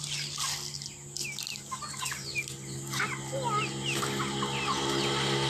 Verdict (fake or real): real